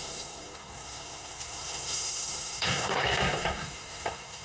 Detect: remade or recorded remade